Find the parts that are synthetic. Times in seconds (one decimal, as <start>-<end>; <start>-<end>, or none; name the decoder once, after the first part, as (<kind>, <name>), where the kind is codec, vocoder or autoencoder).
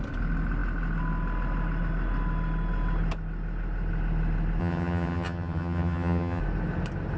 4.6-6.4 (vocoder, HiFi-GAN)